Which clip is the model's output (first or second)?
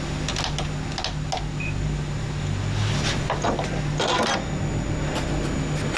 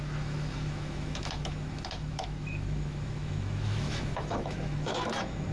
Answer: second